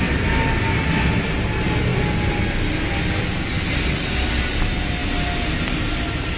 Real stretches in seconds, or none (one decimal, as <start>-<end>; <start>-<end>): 0.0-6.4